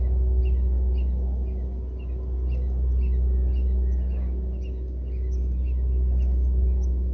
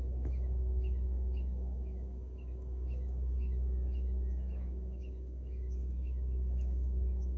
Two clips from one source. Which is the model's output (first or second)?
second